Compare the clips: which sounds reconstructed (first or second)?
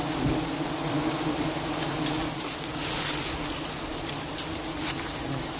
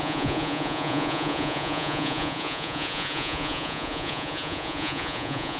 second